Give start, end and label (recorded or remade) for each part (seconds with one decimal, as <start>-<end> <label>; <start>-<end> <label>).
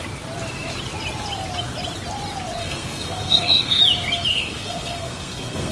0.0-2.6 recorded; 2.6-3.8 remade; 3.8-4.3 recorded; 4.3-5.7 remade